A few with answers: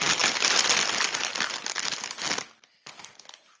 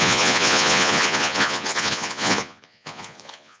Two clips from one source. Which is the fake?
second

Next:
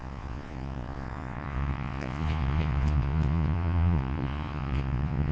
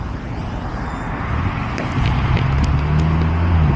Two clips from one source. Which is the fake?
first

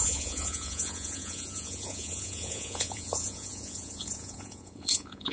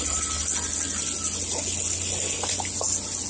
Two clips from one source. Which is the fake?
first